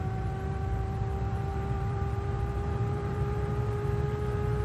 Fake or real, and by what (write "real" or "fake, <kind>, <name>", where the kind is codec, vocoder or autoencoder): fake, vocoder, BigVGAN v2